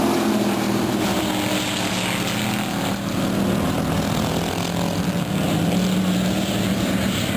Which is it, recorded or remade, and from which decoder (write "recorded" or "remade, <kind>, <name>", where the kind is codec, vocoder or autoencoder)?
recorded